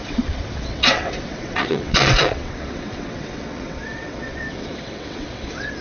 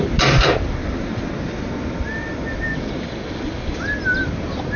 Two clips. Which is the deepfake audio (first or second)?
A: first